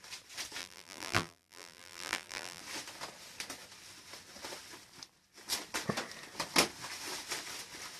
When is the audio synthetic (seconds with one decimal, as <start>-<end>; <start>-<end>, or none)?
0.6-2.6